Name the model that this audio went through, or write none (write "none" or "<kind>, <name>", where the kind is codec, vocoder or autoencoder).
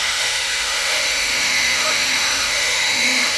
autoencoder, DAC-VAE